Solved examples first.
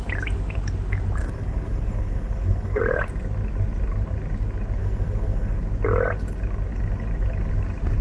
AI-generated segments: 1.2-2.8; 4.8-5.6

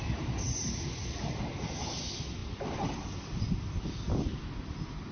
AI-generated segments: none

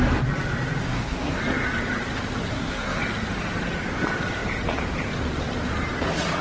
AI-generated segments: 0.8-1.4; 2.5-3.0

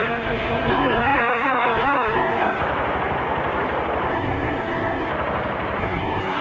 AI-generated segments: 0.0-2.6; 4.1-5.1; 5.8-6.4

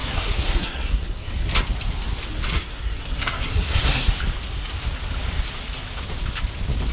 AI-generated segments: 0.0-1.3; 2.5-4.2

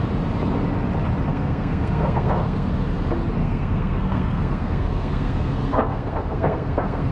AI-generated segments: 1.3-2.7; 3.4-7.1

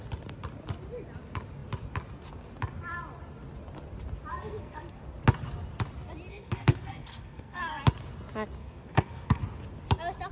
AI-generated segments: 4.3-5.0; 6.3-7.8; 8.6-9.4

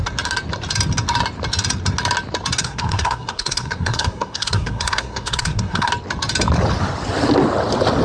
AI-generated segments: 2.6-5.9